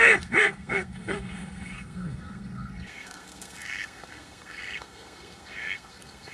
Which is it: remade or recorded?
remade